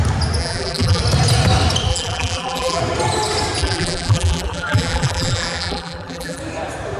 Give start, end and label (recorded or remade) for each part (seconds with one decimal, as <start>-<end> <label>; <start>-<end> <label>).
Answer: 0.0-0.4 recorded; 0.4-1.0 remade; 1.0-1.9 recorded; 1.9-2.8 remade; 2.8-3.6 recorded; 3.6-6.4 remade; 6.4-7.0 recorded